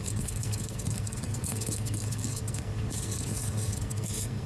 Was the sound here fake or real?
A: fake